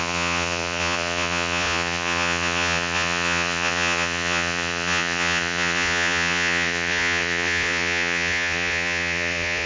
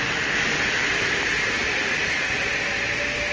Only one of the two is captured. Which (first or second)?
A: second